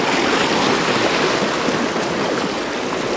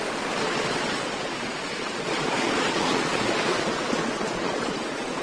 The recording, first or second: first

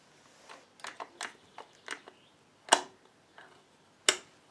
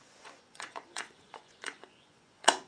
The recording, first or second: first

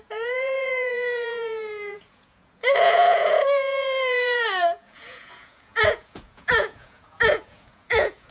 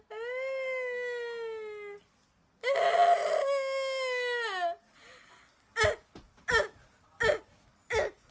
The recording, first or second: second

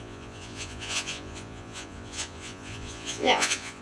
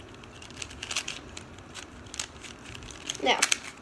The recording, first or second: second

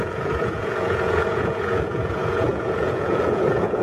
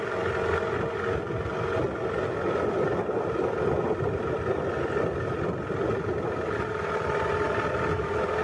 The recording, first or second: second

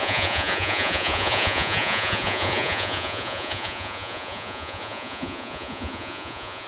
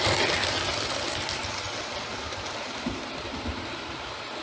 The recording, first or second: second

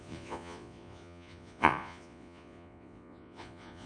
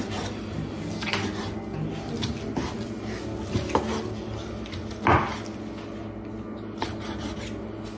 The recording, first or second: second